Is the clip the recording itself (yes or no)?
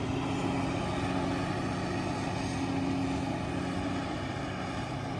yes